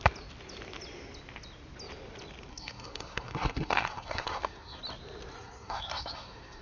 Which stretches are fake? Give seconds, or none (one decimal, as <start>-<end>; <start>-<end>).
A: 2.5-4.8; 5.3-6.6